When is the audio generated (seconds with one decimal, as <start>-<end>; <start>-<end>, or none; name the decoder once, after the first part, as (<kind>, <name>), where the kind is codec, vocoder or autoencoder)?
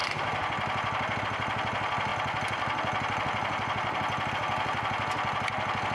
none